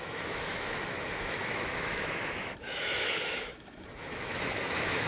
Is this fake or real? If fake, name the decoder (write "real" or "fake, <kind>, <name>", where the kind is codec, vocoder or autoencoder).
fake, autoencoder, DAC-VAE